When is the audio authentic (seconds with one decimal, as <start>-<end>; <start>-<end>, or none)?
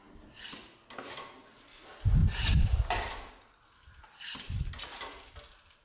0.0-2.2; 4.7-5.8